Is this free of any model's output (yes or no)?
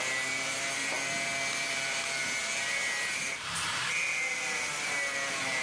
yes